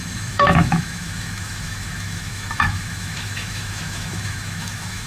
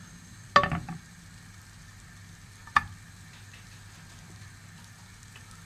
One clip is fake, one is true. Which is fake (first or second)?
first